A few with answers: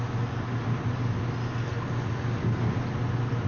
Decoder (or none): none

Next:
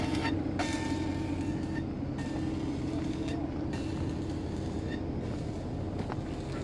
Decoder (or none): none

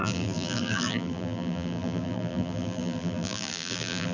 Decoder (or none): vocoder, BigVGAN v2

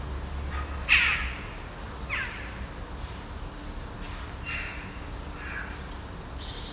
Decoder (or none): none